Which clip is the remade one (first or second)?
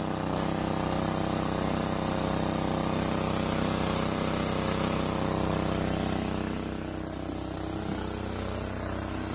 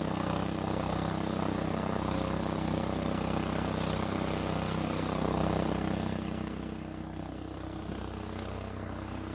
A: second